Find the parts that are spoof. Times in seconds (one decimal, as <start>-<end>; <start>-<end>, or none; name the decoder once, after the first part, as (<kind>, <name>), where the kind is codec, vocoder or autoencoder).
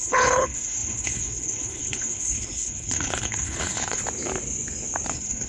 0.0-4.0 (codec, HILCodec); 5.1-5.5